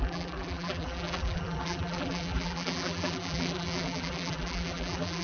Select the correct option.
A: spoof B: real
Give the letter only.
A